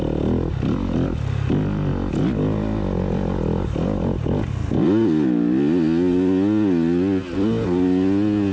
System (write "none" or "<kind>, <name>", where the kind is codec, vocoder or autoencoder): none